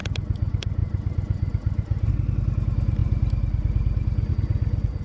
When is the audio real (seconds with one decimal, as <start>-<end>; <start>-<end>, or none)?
0.0-0.8; 2.1-5.0